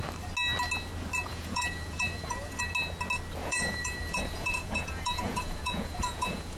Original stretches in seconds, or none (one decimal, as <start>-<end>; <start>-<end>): 0.0-1.3; 2.6-3.4